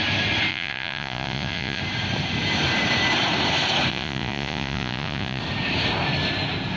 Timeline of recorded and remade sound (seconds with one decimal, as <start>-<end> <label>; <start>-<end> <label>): 0.0-0.5 recorded; 0.5-1.8 remade; 1.8-3.9 recorded; 3.9-5.4 remade; 5.4-6.8 recorded